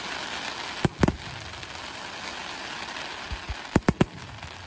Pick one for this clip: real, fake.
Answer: real